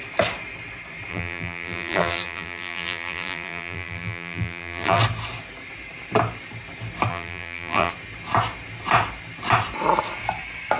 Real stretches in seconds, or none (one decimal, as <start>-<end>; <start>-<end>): 0.0-1.1; 5.0-7.1; 7.9-10.8